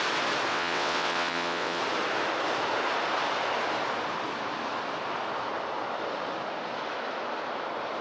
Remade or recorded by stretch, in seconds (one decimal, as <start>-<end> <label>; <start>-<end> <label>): 0.0-0.5 recorded; 0.5-1.8 remade; 1.8-8.0 recorded